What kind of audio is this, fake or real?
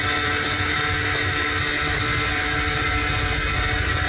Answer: real